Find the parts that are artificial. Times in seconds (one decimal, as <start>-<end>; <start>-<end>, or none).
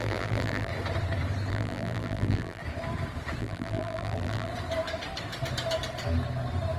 0.0-0.7; 1.5-2.6; 3.4-4.5